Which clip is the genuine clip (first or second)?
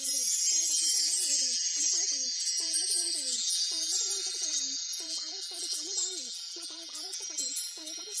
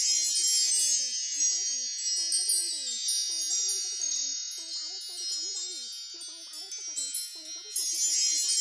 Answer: second